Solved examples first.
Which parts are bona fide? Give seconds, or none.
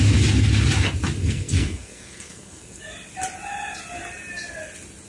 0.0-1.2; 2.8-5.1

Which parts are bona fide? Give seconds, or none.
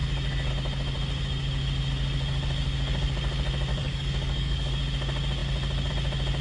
0.0-3.7; 4.8-6.4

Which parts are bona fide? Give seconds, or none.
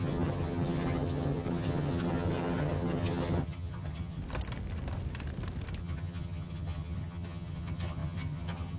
4.2-5.8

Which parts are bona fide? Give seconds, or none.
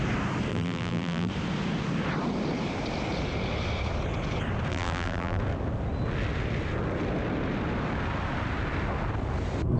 0.0-0.5; 1.3-4.7; 5.4-9.8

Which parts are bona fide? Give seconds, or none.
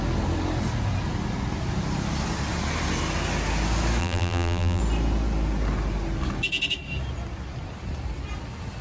0.0-4.0; 4.8-8.8